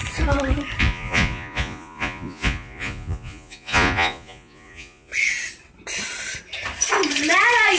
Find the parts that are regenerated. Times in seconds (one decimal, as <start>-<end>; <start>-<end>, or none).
0.8-5.1